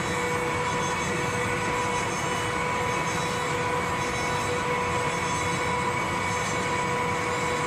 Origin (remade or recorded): recorded